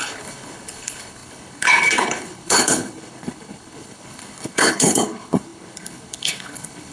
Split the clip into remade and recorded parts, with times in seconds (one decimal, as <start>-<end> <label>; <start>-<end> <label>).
0.0-6.9 remade